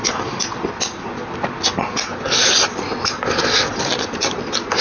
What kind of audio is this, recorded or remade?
recorded